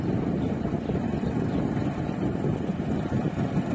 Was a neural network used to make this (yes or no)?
no